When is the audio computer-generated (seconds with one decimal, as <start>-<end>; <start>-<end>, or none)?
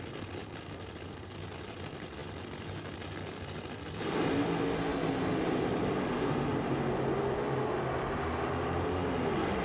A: none